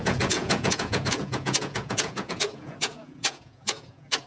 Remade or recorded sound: remade